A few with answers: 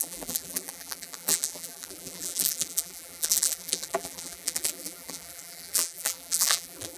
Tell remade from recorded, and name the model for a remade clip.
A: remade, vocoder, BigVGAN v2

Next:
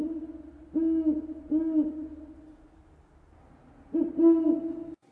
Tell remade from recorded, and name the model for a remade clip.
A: recorded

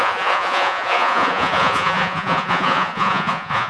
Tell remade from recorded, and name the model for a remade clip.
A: remade, vocoder, Vocos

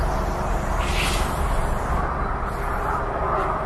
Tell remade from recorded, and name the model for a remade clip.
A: recorded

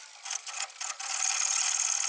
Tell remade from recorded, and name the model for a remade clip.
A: recorded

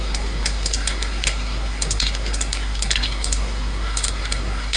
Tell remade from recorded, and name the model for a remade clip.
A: remade, codec, SNAC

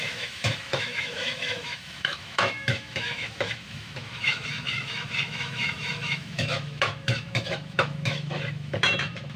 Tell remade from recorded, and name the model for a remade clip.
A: remade, autoencoder, DAC-VAE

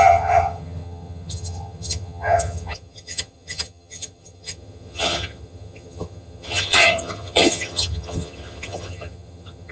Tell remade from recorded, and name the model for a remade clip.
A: remade, vocoder, HiFi-GAN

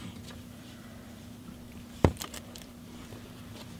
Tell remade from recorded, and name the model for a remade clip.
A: remade, vocoder, BigVGAN v2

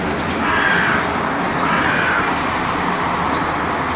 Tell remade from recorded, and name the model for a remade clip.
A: recorded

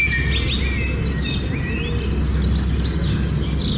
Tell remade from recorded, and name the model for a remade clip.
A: recorded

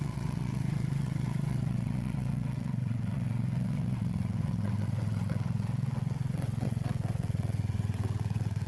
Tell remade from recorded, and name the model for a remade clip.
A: remade, vocoder, WaveNeXt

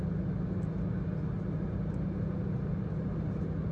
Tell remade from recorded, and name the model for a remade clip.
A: recorded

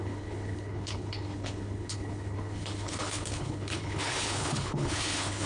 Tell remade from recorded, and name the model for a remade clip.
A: remade, codec, HILCodec